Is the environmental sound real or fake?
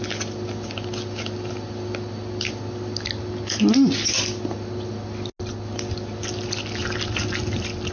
real